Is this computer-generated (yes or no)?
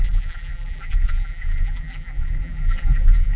yes